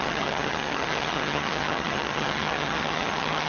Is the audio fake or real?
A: fake